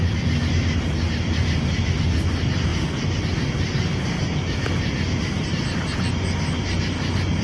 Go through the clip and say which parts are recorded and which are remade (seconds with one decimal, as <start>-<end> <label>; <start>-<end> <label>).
0.0-7.4 recorded